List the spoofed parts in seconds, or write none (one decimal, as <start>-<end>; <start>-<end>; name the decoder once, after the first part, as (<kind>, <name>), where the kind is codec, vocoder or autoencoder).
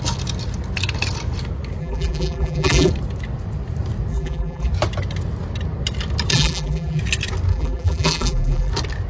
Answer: 1.8-2.9 (vocoder, BigVGAN v2); 4.1-4.7; 6.3-7.0; 7.5-8.7